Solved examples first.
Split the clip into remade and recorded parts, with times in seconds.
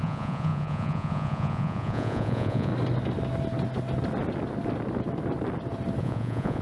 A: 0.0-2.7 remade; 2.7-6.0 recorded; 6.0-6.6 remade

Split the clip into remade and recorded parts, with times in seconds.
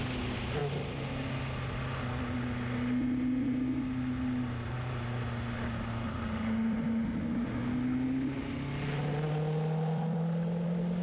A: 0.0-11.0 recorded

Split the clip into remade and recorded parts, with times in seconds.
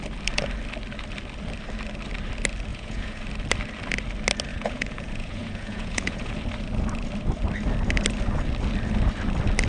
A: 0.0-2.7 recorded; 2.7-3.2 remade; 3.2-4.5 recorded; 4.5-6.4 remade; 6.4-9.7 recorded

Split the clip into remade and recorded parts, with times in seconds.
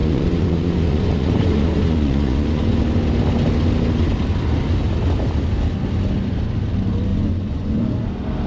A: 0.0-2.8 remade; 2.8-7.1 recorded; 7.1-7.8 remade; 7.8-8.5 recorded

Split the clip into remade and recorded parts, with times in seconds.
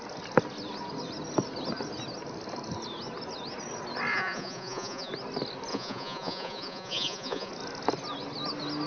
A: 0.0-4.1 recorded; 4.1-5.1 remade; 5.1-5.7 recorded; 5.7-7.5 remade; 7.5-8.9 recorded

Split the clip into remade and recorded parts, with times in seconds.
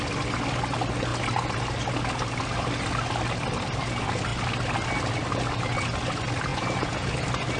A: 0.0-6.5 recorded; 6.5-7.1 remade; 7.1-7.6 recorded